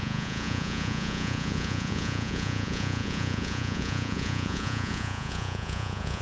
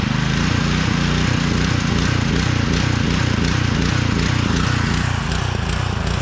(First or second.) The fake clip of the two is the first